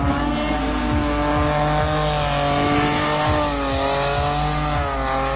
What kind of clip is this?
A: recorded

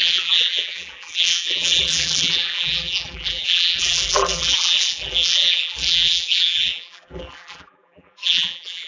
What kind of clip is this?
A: remade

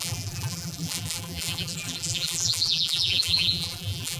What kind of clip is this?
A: remade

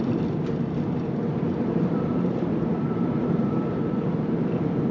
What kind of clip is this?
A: remade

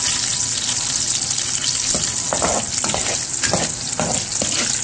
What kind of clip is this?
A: recorded